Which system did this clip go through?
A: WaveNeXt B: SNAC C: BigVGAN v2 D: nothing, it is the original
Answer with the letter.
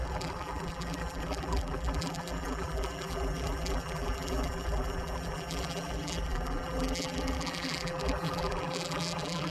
C